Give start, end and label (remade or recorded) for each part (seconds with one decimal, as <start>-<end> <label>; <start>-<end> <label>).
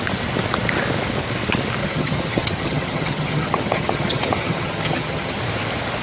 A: 0.0-1.8 recorded; 1.8-5.4 remade; 5.4-6.0 recorded